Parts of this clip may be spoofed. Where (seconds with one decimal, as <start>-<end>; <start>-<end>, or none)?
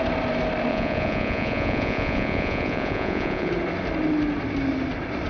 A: 0.7-3.5